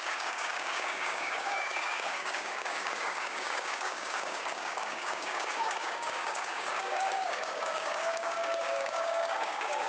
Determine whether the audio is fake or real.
fake